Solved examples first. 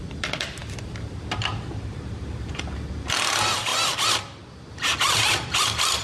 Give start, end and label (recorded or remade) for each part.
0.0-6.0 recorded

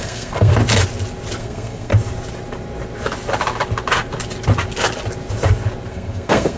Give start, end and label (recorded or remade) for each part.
0.0-0.5 remade; 0.5-1.4 recorded; 1.4-1.9 remade; 1.9-5.9 recorded; 5.9-6.6 remade

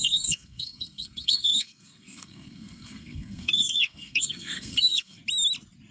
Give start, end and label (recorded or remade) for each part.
0.0-5.2 remade; 5.2-5.9 recorded

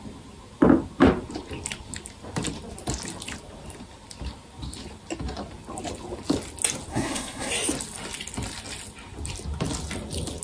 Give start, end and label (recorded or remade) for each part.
0.0-6.9 recorded; 6.9-7.5 remade; 7.5-10.4 recorded

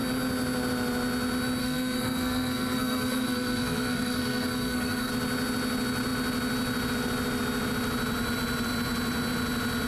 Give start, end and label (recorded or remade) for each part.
0.0-1.6 recorded; 1.6-5.1 remade; 5.1-9.9 recorded